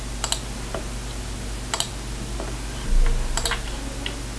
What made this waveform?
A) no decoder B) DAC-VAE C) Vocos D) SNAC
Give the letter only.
A